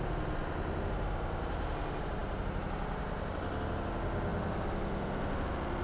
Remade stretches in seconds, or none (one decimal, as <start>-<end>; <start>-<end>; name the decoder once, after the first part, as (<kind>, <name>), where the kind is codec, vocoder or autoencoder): none